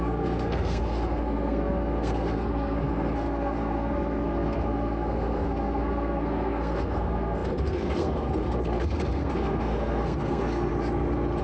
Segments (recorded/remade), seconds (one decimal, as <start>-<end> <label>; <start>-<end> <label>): 0.0-10.7 remade; 10.7-11.4 recorded